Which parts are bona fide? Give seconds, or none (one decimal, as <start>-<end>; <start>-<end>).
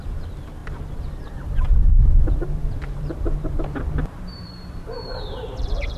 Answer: none